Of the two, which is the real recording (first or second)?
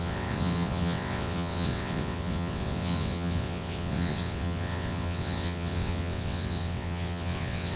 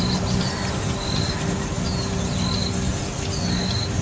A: second